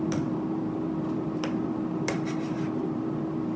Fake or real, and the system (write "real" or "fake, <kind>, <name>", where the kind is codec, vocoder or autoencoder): fake, vocoder, BigVGAN v2